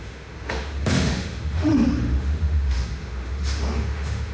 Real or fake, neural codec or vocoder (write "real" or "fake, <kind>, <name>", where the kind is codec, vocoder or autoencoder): fake, autoencoder, DAC-VAE